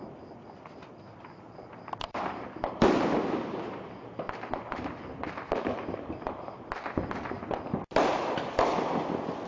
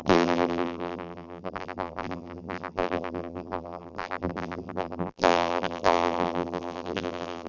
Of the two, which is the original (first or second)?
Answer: first